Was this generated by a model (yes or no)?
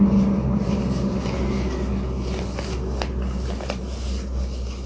no